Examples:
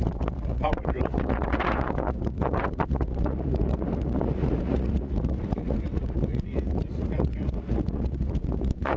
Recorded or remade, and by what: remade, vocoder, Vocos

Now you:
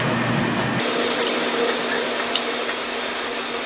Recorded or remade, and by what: recorded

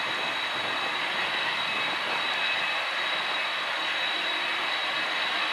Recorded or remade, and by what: recorded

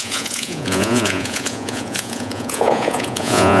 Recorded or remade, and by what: remade, vocoder, Vocos